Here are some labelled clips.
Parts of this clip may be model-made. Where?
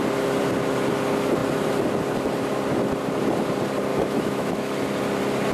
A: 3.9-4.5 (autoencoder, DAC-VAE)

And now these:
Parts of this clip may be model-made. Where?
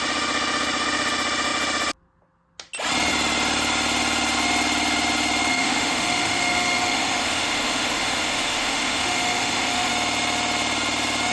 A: 5.5-9.9 (autoencoder, DAC-VAE)